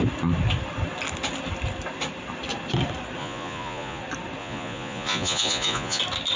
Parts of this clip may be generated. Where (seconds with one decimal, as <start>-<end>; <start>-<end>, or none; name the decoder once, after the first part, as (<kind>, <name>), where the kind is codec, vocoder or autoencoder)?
3.2-4.0 (vocoder, Vocos); 4.4-6.0